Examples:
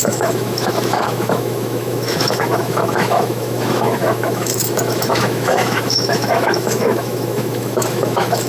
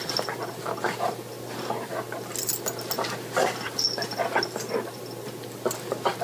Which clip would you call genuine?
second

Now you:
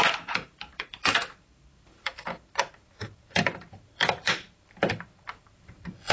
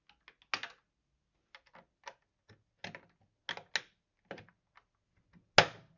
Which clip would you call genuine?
second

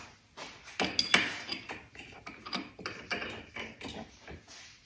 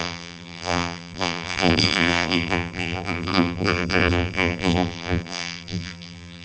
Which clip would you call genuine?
first